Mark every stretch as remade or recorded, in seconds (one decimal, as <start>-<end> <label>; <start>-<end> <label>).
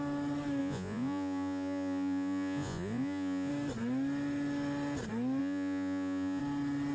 0.0-0.6 recorded; 0.6-3.5 remade; 3.5-5.4 recorded; 5.4-6.4 remade; 6.4-6.9 recorded